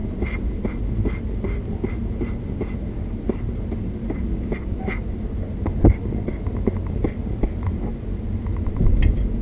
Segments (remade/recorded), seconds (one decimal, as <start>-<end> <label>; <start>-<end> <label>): 0.0-9.4 recorded